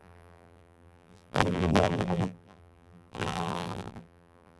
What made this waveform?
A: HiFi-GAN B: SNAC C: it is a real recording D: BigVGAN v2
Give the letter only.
D